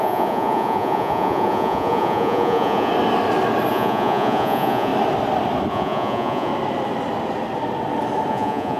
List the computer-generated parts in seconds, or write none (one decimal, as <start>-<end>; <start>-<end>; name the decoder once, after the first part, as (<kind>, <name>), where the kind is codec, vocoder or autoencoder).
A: 0.0-2.9 (vocoder, Vocos); 3.7-4.9; 5.7-6.5; 8.3-8.8